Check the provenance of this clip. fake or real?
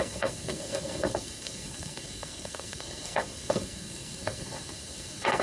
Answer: fake